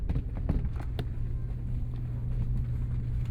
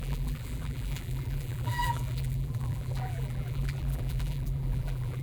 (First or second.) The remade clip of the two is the second